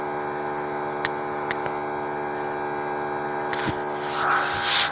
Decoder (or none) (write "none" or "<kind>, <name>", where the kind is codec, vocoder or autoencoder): none